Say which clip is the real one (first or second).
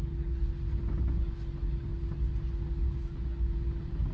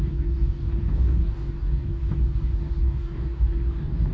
first